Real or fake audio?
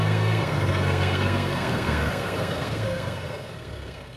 fake